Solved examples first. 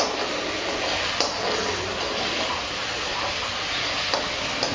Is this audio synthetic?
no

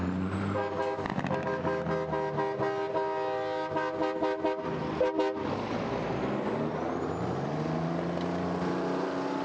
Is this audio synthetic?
no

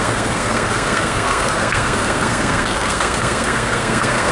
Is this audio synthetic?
yes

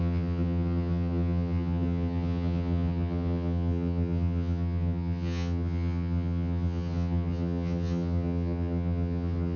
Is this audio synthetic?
yes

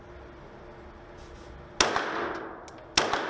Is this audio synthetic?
no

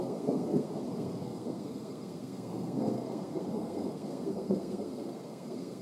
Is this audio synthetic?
yes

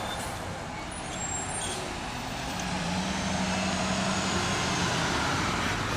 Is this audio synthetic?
no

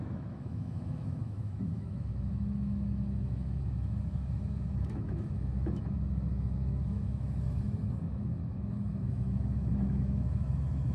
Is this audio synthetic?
yes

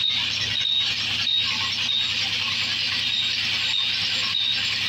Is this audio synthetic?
no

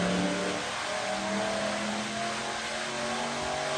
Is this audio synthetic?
no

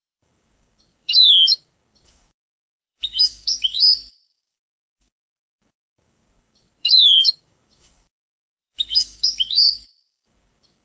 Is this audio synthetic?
yes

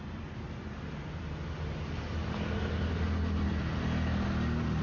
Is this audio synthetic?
no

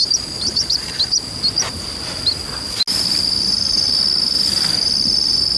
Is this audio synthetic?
no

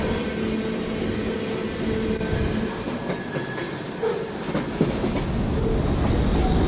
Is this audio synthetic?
no